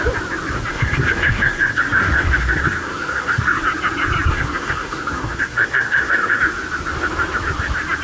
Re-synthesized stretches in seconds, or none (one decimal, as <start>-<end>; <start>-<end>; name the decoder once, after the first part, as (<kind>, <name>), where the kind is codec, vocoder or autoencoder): 0.7-3.6 (codec, SNAC); 4.3-6.4